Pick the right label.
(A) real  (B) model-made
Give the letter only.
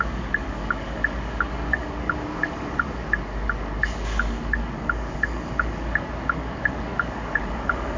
B